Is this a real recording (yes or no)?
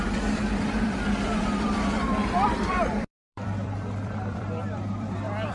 no